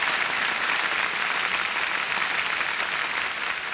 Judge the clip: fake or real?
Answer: real